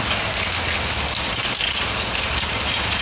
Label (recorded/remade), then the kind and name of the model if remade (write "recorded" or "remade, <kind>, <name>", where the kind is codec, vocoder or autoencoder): recorded